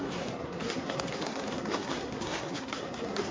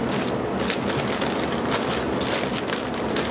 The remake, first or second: first